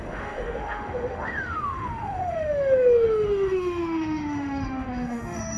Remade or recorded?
remade